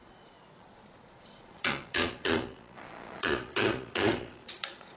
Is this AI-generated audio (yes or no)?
yes